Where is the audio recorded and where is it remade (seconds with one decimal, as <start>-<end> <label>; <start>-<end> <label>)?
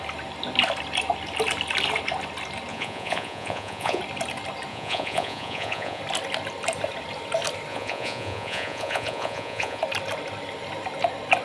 0.0-2.7 recorded; 2.7-4.0 remade; 4.0-4.7 recorded; 4.7-6.0 remade; 6.0-7.7 recorded; 7.7-9.8 remade; 9.8-11.4 recorded